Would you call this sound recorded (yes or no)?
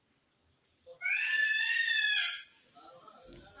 yes